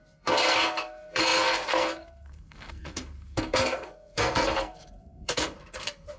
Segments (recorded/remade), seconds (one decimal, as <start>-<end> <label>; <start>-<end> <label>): 0.0-6.2 remade